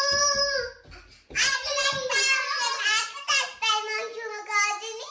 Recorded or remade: recorded